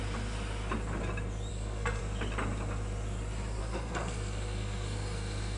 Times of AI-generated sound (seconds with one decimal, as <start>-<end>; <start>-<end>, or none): 1.5-2.0; 3.6-5.6